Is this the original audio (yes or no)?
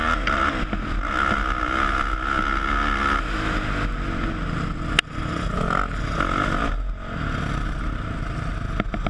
yes